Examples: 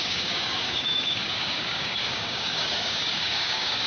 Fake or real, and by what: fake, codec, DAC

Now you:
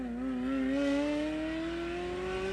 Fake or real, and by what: real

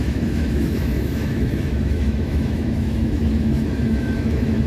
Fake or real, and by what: fake, autoencoder, DAC-VAE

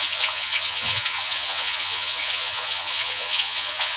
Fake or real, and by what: fake, vocoder, Vocos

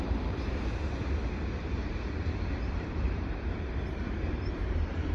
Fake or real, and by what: fake, vocoder, BigVGAN v2